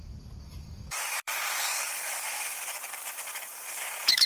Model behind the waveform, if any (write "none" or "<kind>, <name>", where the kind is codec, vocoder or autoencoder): codec, DAC